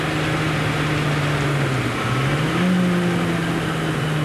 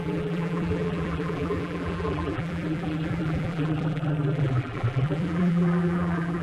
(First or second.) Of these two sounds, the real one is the first